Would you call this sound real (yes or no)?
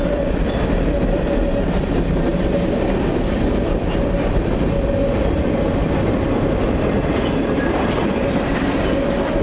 no